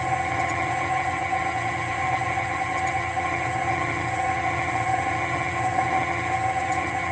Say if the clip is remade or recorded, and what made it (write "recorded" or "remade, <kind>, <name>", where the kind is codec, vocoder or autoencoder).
remade, vocoder, HiFi-GAN